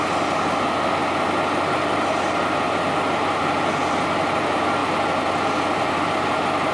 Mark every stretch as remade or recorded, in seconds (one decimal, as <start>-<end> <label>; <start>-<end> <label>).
0.0-6.7 recorded